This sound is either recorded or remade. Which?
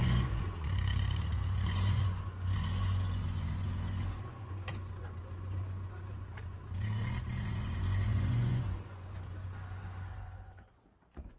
remade